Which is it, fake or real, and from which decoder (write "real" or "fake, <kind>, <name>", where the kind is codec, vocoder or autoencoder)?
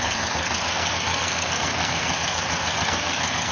fake, codec, SNAC